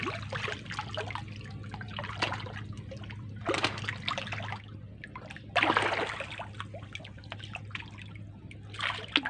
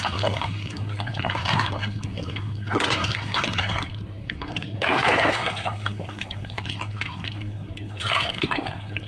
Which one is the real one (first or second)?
first